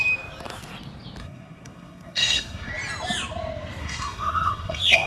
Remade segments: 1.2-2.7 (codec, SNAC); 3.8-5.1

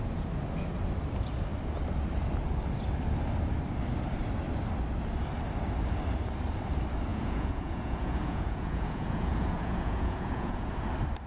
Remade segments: 7.1-10.7 (vocoder, Vocos)